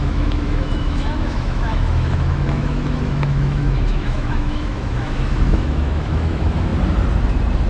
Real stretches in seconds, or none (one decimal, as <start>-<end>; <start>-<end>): 6.7-7.7